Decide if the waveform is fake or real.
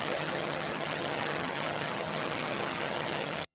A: fake